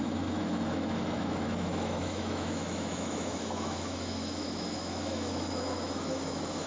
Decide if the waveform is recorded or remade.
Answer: remade